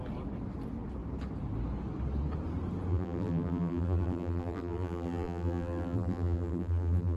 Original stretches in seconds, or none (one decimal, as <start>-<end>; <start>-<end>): 0.0-2.9